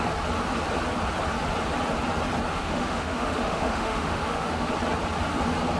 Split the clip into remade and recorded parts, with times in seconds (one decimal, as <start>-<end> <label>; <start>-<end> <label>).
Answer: 0.0-2.5 recorded; 2.5-4.7 remade; 4.7-5.8 recorded